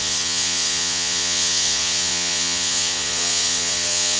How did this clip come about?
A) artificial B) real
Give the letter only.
A